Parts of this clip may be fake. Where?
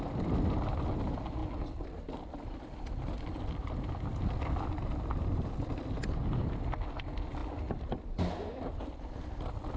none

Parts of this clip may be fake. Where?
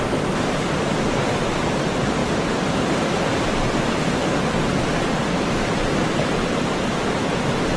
2.2-3.0 (vocoder, BigVGAN v2)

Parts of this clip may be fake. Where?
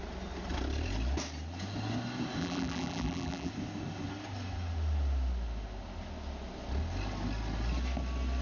2.4-3.5 (vocoder, BigVGAN v2)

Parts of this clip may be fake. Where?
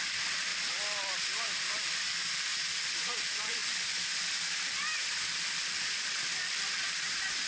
0.0-2.5 (vocoder, BigVGAN v2); 3.2-3.6; 4.5-7.5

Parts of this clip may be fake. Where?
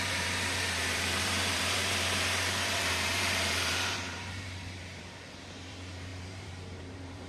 0.0-7.3 (vocoder, BigVGAN v2)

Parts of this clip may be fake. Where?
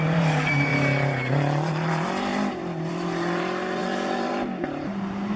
0.0-0.7 (vocoder, BigVGAN v2); 1.7-5.4